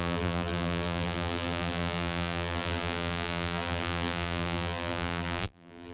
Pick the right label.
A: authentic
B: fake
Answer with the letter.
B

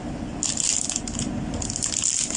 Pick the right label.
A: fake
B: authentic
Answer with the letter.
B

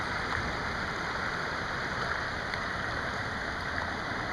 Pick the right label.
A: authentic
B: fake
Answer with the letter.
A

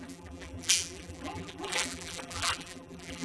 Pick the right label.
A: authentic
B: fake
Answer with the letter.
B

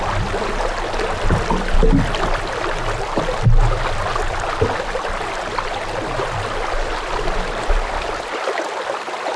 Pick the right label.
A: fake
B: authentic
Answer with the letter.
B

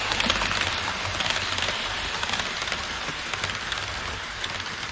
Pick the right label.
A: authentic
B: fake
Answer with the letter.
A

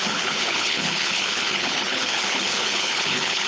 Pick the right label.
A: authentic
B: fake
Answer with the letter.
B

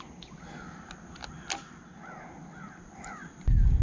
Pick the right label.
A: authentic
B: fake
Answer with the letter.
A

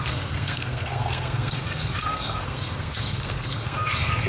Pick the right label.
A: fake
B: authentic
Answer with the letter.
A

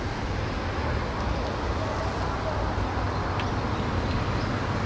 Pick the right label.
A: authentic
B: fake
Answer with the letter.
A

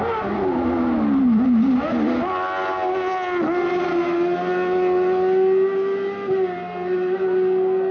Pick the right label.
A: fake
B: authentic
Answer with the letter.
B